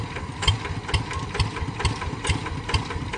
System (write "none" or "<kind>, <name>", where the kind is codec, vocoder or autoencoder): none